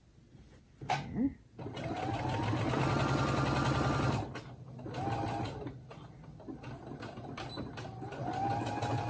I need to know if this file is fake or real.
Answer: real